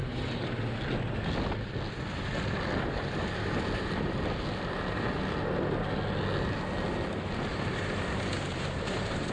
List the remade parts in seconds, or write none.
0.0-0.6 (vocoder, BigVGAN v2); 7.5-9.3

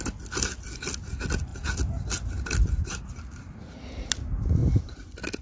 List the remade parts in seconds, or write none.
none

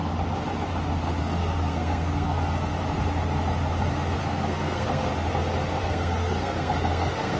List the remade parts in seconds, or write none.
1.2-2.7 (codec, SNAC); 4.2-5.1; 5.8-7.4

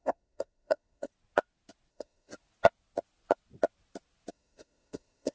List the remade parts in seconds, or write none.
0.0-1.1 (codec, SNAC); 1.9-2.3; 4.3-5.3

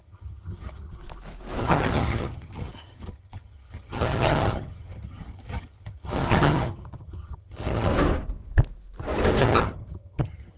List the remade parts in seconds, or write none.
0.0-1.0 (vocoder, HiFi-GAN); 1.6-7.9; 9.4-10.6

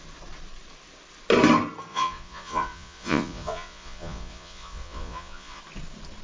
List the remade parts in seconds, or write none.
1.9-5.6 (vocoder, Vocos)

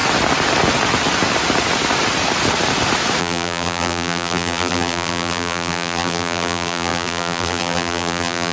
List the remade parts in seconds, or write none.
3.2-8.5 (vocoder, BigVGAN v2)

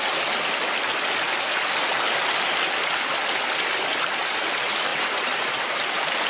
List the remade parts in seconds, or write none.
4.9-5.8 (vocoder, BigVGAN v2)